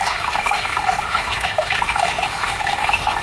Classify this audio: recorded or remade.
remade